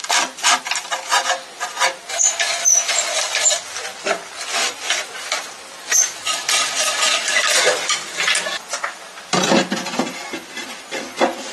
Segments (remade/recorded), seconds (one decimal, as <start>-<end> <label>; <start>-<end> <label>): 0.0-1.1 remade; 1.1-1.7 recorded; 1.7-11.5 remade